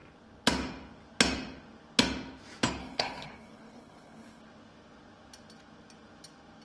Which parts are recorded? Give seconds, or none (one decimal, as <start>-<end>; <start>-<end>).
0.0-2.8; 4.4-6.6

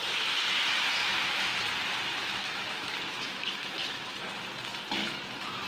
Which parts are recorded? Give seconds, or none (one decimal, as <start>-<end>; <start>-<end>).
0.0-1.0; 1.6-2.2; 4.3-5.0